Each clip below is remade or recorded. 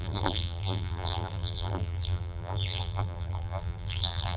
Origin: remade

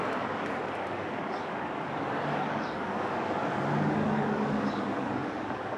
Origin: remade